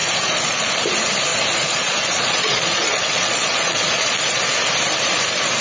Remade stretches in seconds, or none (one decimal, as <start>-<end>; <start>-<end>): 0.0-0.7; 1.3-4.4